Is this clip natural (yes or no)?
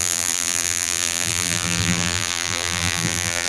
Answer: no